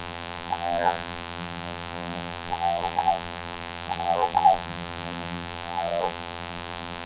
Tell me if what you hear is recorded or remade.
remade